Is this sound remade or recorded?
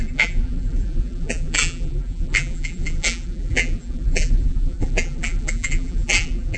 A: remade